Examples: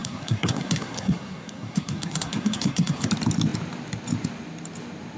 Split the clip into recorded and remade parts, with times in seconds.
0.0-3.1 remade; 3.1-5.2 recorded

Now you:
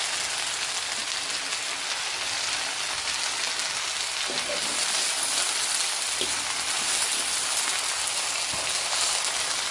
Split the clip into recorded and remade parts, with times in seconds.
0.0-9.7 recorded

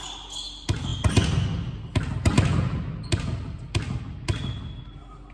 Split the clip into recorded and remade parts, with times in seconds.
0.0-5.3 recorded